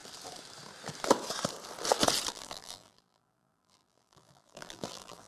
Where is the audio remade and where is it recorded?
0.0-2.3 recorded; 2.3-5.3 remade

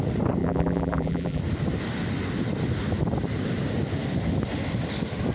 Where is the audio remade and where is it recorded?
0.0-0.4 recorded; 0.4-1.4 remade; 1.4-5.3 recorded

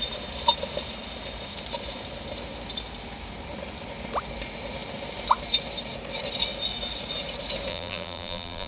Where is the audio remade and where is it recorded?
0.0-7.7 recorded; 7.7-8.7 remade

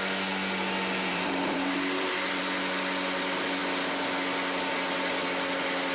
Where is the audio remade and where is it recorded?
0.0-1.1 recorded; 1.1-2.4 remade; 2.4-5.9 recorded

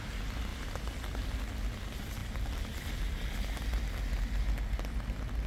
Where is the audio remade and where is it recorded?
0.0-5.5 recorded

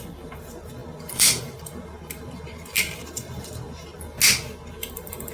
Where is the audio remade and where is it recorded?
0.0-3.9 remade; 3.9-4.8 recorded; 4.8-5.3 remade